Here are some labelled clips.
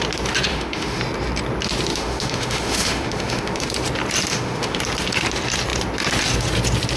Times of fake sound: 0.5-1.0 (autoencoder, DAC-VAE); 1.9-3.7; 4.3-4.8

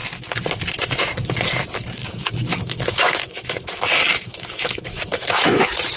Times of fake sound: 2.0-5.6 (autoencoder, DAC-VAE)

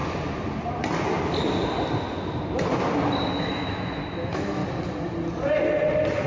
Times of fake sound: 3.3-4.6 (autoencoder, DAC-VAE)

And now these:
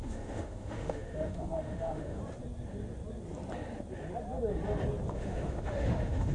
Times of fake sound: 0.0-2.2 (autoencoder, DAC-VAE); 5.1-6.3